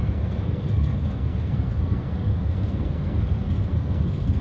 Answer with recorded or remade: remade